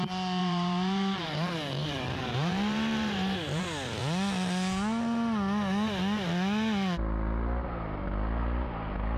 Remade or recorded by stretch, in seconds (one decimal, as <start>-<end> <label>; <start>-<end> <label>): 0.0-0.4 recorded; 0.4-3.6 remade; 3.6-9.2 recorded